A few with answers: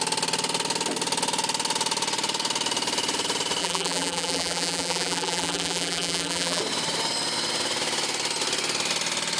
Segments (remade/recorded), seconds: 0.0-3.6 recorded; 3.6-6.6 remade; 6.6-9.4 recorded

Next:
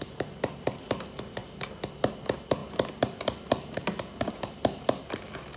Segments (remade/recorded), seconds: 0.0-1.4 remade; 1.4-2.0 recorded; 2.0-2.6 remade; 2.6-4.3 recorded; 4.3-5.6 remade

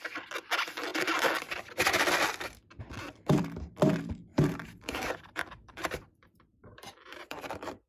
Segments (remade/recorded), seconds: 0.0-4.3 recorded; 4.3-7.9 remade